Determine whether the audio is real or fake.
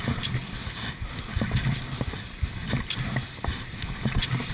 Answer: real